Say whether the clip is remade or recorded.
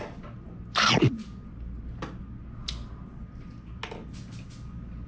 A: recorded